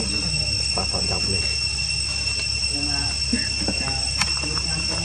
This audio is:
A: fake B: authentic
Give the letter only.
B